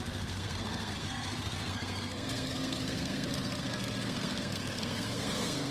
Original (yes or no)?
no